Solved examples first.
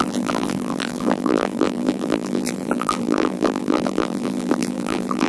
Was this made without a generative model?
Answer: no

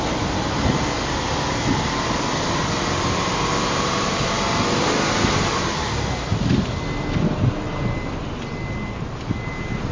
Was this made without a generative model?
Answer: yes